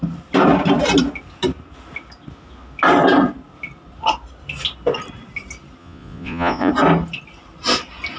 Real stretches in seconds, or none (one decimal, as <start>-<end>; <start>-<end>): 0.0-5.8; 6.7-8.2